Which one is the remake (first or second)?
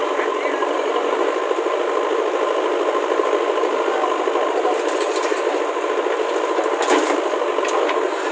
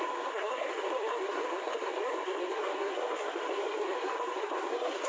second